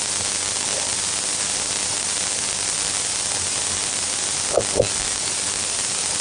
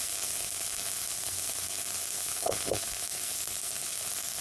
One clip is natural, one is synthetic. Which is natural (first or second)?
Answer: first